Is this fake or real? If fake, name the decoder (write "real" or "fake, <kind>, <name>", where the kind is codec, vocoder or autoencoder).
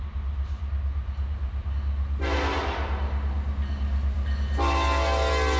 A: real